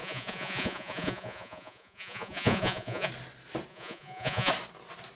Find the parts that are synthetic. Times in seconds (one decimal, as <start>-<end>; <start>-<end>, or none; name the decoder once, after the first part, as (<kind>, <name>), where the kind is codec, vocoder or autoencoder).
0.0-3.1 (vocoder, Vocos); 3.7-4.5